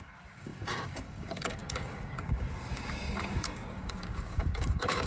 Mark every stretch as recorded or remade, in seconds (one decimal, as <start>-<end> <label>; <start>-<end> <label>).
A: 0.0-5.1 remade

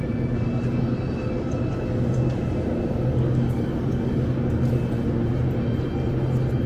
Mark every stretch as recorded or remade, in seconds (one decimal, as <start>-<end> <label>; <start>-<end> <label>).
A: 0.0-3.1 recorded; 3.1-4.2 remade; 4.2-6.7 recorded

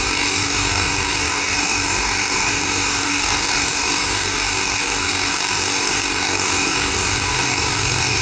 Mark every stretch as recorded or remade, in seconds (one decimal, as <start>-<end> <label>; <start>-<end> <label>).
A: 0.0-8.2 remade

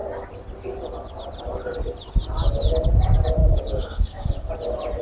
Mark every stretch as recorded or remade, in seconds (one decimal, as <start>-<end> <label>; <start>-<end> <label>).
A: 0.0-3.4 recorded; 3.4-4.5 remade; 4.5-5.0 recorded